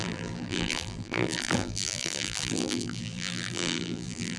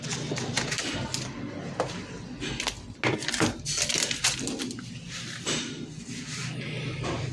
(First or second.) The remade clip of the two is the first